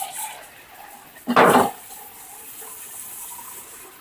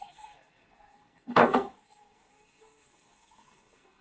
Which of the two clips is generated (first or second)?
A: second